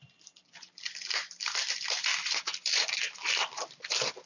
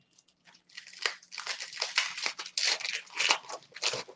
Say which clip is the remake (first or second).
first